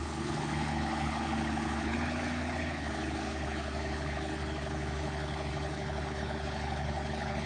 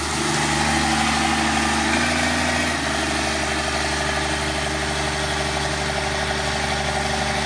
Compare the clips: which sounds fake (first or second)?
first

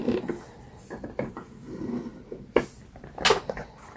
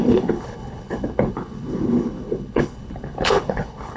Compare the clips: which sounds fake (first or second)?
second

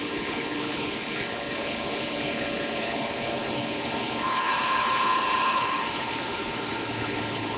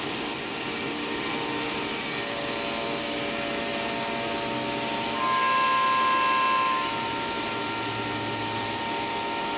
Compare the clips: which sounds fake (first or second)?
first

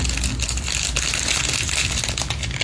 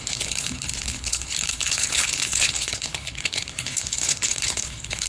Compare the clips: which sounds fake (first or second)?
second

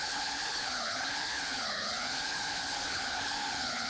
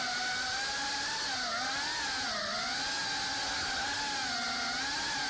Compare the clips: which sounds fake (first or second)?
first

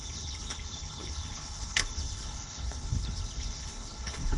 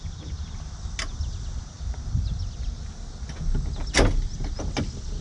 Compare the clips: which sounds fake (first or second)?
first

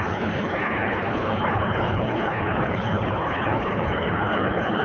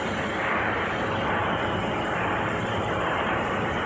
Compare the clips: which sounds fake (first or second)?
first